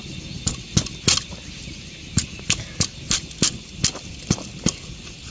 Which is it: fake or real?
real